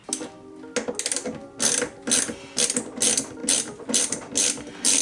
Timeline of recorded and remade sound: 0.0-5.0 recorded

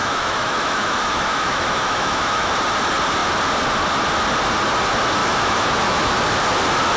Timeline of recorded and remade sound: 0.0-2.5 remade; 2.5-5.2 recorded; 5.2-6.1 remade; 6.1-7.0 recorded